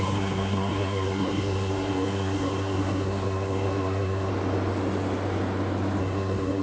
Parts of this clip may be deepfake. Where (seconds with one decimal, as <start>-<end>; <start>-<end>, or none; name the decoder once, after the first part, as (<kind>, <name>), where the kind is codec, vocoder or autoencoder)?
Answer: 0.0-4.3 (codec, SNAC); 6.0-6.6